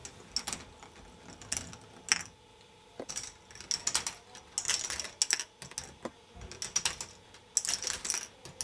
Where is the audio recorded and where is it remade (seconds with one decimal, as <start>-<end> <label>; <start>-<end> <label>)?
0.0-8.6 recorded